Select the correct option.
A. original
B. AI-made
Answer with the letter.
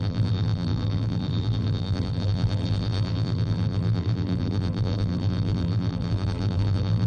B